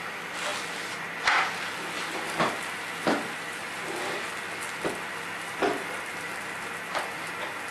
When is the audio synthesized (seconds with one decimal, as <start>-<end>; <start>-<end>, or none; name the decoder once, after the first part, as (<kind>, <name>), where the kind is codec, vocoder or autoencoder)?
none